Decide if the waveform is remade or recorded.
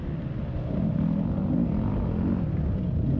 recorded